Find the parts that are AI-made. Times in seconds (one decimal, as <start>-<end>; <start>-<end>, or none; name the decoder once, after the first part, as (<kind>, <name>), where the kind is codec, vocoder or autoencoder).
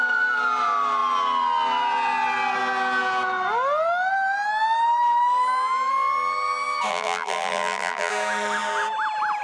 6.9-8.1 (vocoder, BigVGAN v2)